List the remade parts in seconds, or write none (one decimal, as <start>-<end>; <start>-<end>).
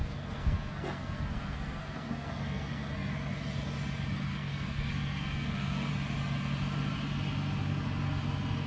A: 0.0-3.1; 4.3-5.9